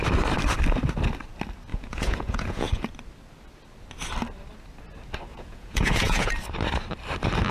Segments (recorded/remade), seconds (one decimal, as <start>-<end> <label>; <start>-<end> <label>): 0.0-1.7 recorded; 1.7-2.9 remade; 2.9-5.3 recorded; 5.3-6.3 remade; 6.3-7.5 recorded